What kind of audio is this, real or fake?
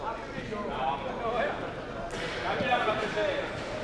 real